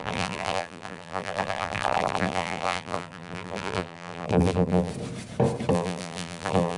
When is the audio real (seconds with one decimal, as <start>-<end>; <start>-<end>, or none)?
4.9-5.7